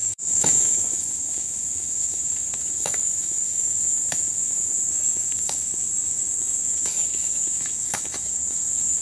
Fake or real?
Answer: fake